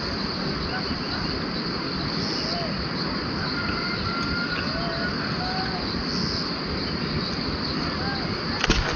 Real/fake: real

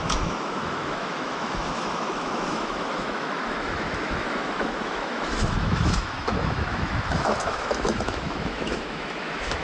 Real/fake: fake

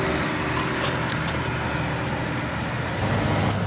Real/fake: real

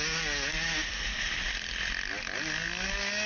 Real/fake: real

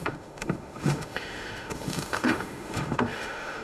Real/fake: fake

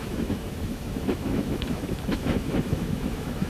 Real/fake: fake